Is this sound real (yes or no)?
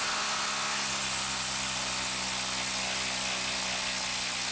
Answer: yes